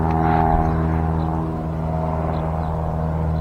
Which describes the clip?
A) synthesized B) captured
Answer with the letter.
B